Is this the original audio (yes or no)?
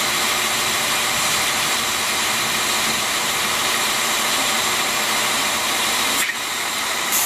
no